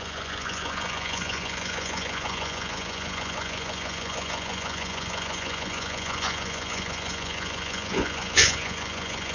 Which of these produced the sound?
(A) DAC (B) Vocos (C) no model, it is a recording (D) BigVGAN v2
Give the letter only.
B